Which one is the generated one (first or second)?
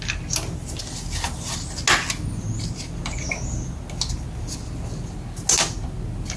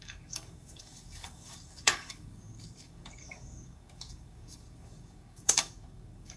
second